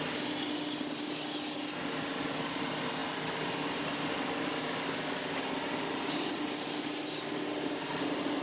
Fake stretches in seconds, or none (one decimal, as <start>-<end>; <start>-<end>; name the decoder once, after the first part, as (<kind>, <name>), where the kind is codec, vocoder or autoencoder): none